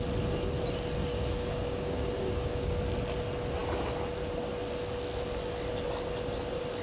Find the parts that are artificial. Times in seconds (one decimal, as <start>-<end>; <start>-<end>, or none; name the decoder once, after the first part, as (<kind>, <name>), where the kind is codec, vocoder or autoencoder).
1.1-2.8 (codec, DAC)